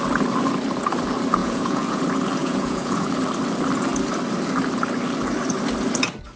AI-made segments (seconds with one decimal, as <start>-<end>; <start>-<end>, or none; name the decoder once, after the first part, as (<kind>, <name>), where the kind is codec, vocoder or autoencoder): 1.4-2.0 (vocoder, Vocos); 2.4-3.1